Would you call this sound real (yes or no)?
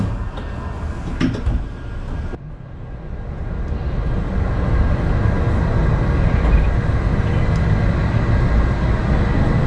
yes